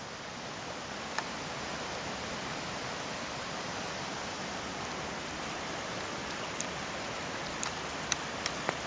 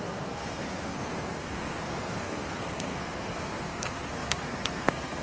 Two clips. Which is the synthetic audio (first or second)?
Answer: second